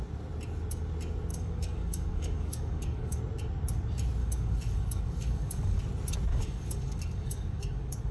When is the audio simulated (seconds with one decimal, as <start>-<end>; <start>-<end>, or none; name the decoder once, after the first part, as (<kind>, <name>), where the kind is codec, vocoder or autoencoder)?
1.3-3.2 (codec, DAC); 4.2-5.8; 6.3-8.1